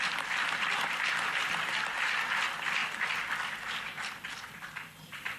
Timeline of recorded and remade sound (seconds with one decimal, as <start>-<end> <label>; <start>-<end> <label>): 0.0-5.4 recorded